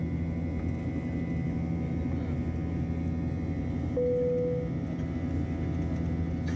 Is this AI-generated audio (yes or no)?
no